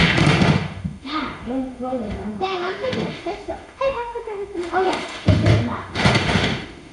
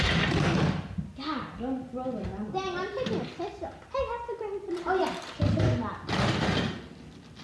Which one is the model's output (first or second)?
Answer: first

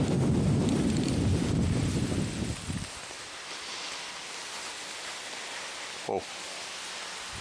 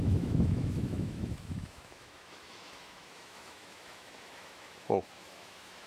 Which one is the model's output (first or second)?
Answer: second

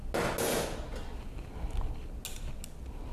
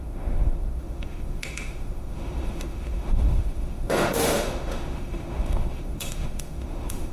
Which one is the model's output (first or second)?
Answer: second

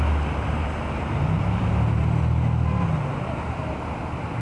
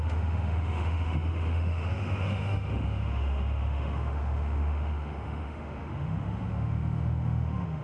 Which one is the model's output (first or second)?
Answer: second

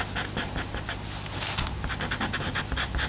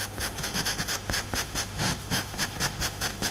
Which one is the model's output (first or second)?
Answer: second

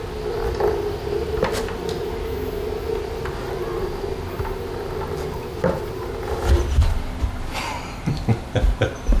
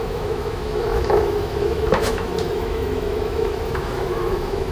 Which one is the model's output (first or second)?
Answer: second